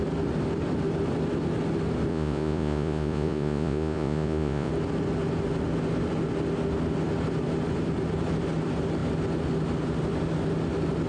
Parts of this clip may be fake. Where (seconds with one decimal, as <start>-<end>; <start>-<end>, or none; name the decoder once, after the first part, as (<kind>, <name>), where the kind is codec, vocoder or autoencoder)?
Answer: 2.1-4.7 (vocoder, Vocos)